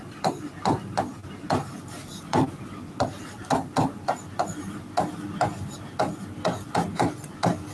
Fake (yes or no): no